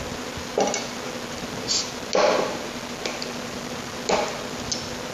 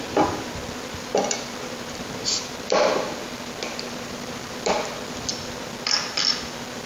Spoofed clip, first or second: second